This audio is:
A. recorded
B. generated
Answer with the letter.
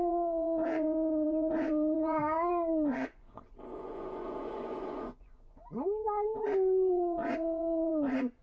B